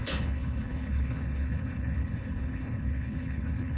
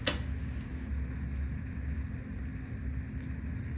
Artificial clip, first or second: first